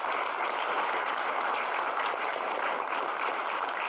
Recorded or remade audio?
recorded